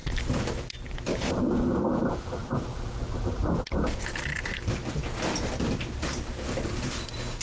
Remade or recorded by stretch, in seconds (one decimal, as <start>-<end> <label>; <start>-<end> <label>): 0.0-7.4 recorded